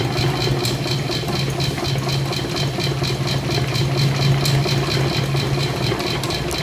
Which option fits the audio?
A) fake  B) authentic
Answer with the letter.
B